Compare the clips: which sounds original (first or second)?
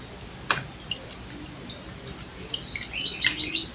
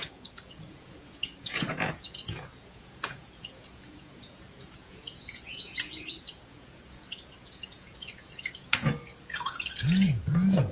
first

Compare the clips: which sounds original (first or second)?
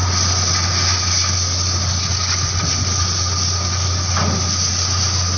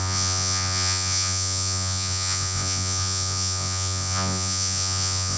first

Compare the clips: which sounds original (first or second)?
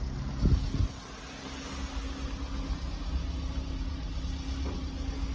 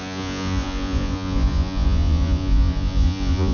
first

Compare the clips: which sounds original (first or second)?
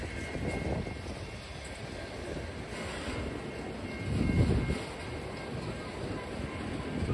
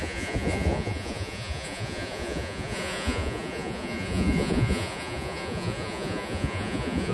first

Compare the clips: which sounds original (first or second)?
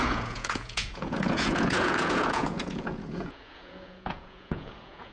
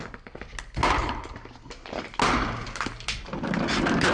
second